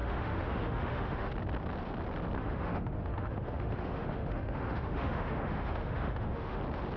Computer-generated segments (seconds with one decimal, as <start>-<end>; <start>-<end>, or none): 0.0-1.3; 2.4-6.6